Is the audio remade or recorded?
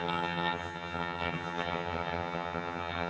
remade